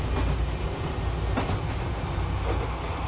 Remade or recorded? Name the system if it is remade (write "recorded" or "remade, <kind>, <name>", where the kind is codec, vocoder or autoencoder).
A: recorded